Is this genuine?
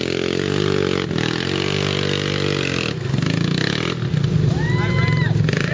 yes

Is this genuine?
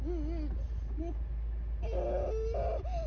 yes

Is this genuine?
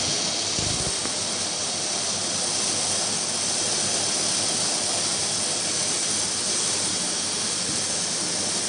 yes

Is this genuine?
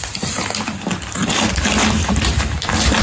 no